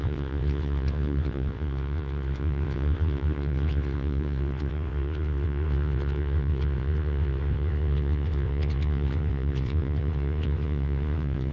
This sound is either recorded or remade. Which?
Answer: remade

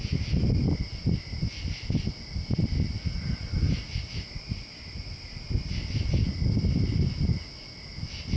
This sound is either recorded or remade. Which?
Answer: recorded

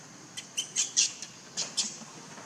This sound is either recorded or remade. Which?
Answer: recorded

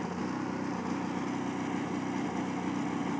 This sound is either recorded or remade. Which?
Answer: recorded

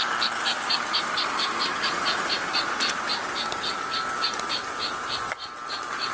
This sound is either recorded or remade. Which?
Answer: recorded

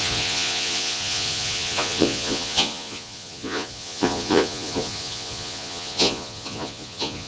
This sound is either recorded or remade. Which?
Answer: remade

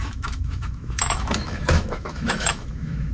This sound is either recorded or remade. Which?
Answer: remade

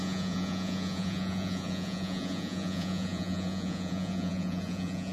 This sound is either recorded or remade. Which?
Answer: remade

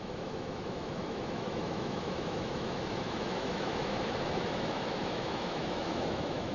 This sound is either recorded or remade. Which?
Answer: remade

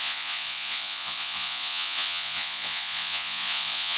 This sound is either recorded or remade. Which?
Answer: remade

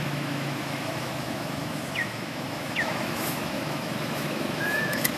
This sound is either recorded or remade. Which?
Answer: remade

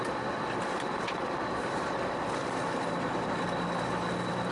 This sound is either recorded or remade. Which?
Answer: recorded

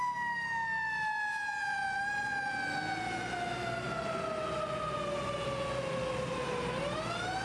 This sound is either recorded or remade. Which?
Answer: recorded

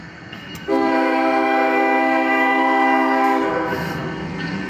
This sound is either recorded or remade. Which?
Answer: remade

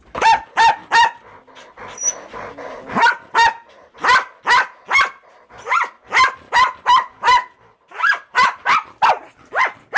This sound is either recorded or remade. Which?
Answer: recorded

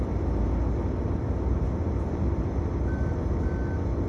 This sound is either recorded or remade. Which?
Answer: recorded